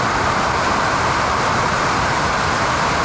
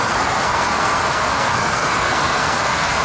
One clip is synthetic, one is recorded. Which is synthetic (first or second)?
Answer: second